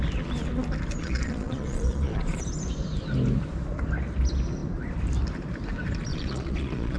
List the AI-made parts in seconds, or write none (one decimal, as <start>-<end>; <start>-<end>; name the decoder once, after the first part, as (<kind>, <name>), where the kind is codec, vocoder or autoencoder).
1.0-2.4 (vocoder, Vocos); 6.1-7.0